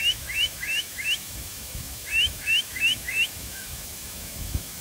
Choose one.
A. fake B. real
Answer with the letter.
A